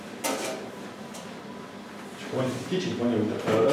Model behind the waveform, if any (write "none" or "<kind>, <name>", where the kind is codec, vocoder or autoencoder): none